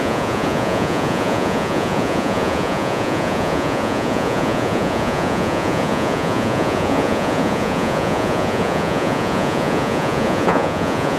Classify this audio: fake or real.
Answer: fake